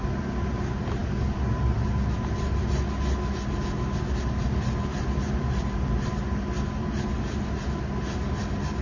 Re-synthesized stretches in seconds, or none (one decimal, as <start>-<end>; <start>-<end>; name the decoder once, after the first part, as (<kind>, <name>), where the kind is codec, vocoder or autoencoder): 1.0-2.6 (vocoder, BigVGAN v2)